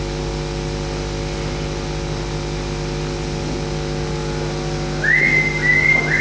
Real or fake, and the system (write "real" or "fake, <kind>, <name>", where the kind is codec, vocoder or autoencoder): real